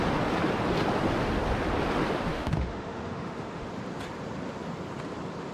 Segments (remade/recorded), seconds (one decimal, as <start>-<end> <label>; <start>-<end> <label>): 0.0-2.3 recorded; 2.3-3.7 remade; 3.7-5.5 recorded